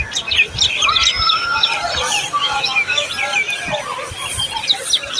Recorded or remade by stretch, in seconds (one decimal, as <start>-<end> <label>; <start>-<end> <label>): 0.0-2.4 recorded; 2.4-3.1 remade; 3.1-5.2 recorded